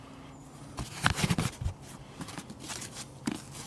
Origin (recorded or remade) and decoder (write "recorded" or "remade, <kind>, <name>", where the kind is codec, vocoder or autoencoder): recorded